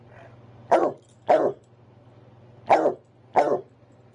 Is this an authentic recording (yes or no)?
yes